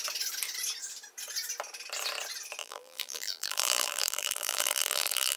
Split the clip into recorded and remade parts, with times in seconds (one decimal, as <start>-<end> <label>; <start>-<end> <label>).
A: 0.0-2.6 recorded; 2.6-5.4 remade